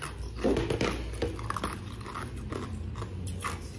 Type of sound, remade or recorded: recorded